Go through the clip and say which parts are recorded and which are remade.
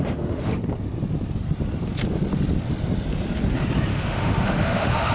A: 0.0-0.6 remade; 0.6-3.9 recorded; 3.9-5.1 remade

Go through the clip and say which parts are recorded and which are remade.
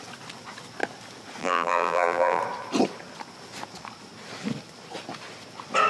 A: 0.0-1.4 recorded; 1.4-2.4 remade; 2.4-5.9 recorded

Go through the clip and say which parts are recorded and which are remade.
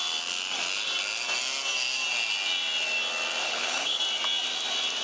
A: 0.0-3.4 recorded; 3.4-4.0 remade; 4.0-5.0 recorded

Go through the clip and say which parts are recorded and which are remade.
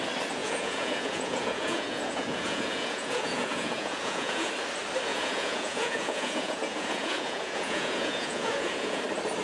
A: 0.0-0.4 recorded; 0.4-4.5 remade; 4.5-5.1 recorded; 5.1-9.0 remade; 9.0-9.4 recorded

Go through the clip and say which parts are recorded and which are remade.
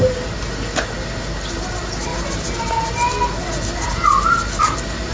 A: 0.0-5.1 recorded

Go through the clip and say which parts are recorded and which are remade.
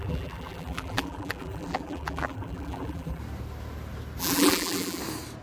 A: 0.0-3.2 remade; 3.2-4.2 recorded; 4.2-5.0 remade; 5.0-5.4 recorded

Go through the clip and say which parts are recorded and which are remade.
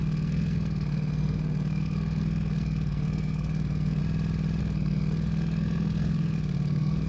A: 0.0-4.0 remade; 4.0-4.6 recorded; 4.6-7.1 remade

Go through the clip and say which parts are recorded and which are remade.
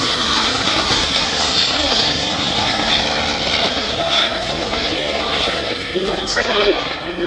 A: 0.0-2.9 remade; 2.9-3.7 recorded; 3.7-7.3 remade